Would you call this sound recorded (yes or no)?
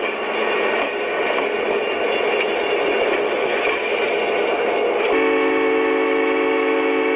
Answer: yes